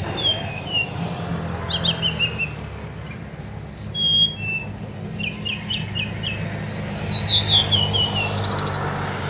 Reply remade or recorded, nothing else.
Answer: recorded